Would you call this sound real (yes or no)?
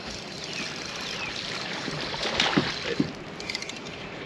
yes